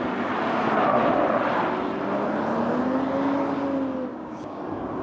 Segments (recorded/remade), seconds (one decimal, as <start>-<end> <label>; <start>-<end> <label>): 0.0-4.1 recorded; 4.1-4.6 remade; 4.6-5.0 recorded